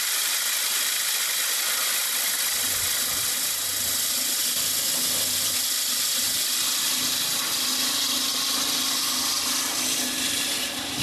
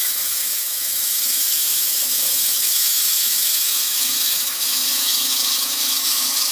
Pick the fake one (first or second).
second